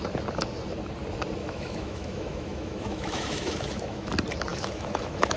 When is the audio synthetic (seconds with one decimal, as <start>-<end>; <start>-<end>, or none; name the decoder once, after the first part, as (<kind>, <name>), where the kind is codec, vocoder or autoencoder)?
1.4-4.1 (autoencoder, DAC-VAE); 4.5-5.4